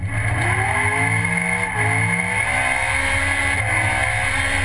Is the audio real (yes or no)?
yes